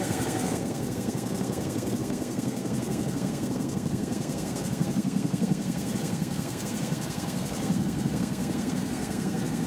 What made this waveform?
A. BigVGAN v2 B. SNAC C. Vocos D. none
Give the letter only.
B